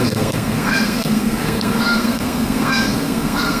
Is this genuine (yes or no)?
no